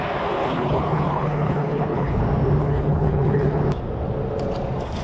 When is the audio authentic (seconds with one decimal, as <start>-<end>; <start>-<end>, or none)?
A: 0.0-0.4; 2.2-2.6; 3.6-5.0